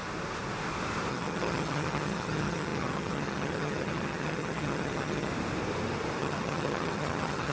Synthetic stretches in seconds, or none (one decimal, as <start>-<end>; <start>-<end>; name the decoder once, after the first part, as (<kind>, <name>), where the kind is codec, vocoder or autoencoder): 1.1-5.3 (vocoder, HiFi-GAN); 6.2-7.5